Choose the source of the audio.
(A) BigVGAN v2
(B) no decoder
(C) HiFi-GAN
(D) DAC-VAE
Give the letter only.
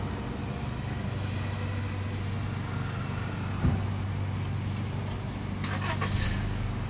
B